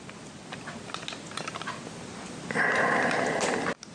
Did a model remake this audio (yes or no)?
no